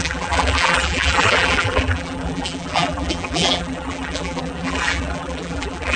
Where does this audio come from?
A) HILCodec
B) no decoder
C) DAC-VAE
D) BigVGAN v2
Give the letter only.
D